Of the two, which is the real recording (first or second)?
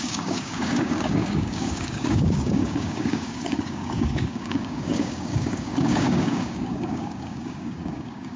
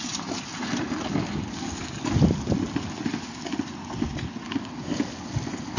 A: second